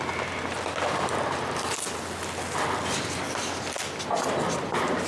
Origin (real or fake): real